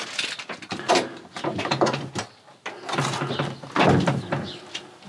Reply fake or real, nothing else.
real